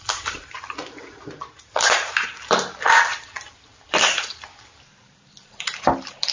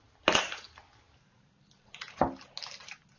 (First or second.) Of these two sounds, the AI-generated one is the first